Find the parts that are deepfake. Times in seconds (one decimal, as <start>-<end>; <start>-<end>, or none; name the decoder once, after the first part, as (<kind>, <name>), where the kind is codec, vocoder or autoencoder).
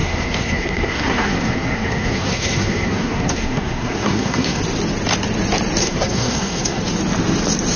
0.0-4.6 (codec, SNAC); 5.8-6.8